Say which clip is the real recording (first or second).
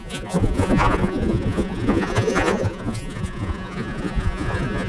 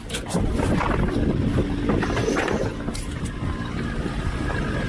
second